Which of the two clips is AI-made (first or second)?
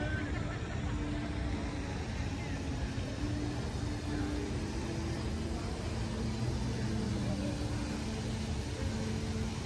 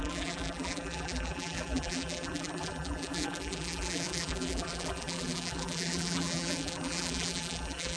second